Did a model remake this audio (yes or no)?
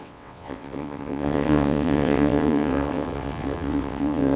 yes